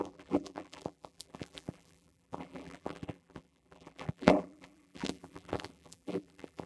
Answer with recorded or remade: remade